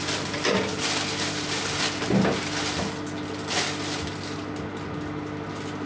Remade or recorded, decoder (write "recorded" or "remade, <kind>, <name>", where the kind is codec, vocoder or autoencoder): recorded